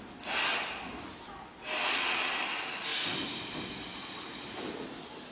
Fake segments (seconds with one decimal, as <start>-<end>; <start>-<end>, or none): 1.8-2.3